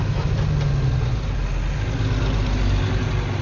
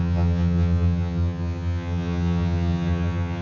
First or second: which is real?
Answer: first